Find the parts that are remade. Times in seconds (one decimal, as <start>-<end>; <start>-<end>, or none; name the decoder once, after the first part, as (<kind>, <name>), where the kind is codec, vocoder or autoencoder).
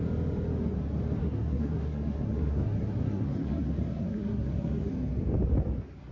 1.2-4.9 (codec, SNAC)